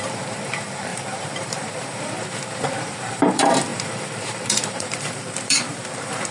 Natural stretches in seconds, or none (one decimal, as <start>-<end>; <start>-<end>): none